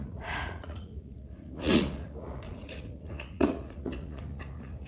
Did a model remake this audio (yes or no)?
yes